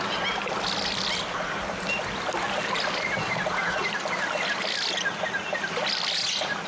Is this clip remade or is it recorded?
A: recorded